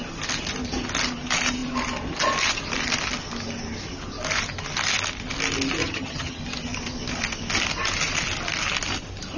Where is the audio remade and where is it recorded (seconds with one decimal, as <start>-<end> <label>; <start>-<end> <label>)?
0.0-5.8 recorded; 5.8-6.4 remade; 6.4-9.4 recorded